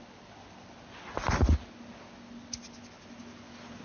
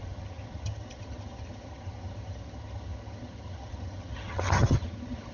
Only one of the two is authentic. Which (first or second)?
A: first